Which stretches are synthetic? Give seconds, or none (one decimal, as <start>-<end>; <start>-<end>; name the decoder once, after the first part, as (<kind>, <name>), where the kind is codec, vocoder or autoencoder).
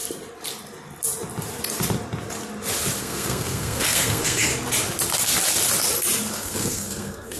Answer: 3.0-4.5 (codec, SNAC); 6.3-7.4